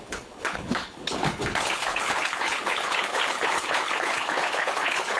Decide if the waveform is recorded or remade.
remade